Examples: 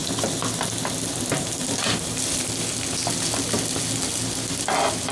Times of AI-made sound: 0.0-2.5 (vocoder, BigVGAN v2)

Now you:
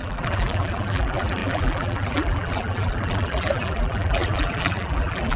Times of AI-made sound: 0.0-5.4 (vocoder, BigVGAN v2)

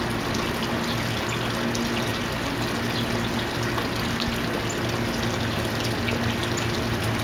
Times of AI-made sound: none

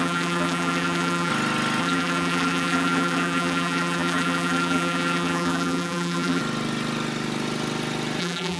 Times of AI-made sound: 0.0-1.3 (vocoder, BigVGAN v2); 1.8-6.4; 8.2-8.6

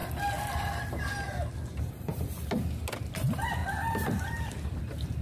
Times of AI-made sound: 1.8-5.2 (vocoder, BigVGAN v2)

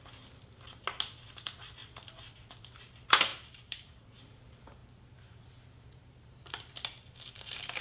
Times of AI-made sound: 3.3-4.2 (vocoder, BigVGAN v2); 4.8-5.4; 6.0-6.7

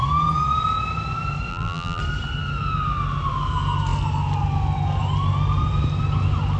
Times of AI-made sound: 1.5-2.0 (vocoder, BigVGAN v2)